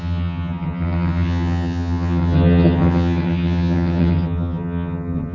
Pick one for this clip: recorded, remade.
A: remade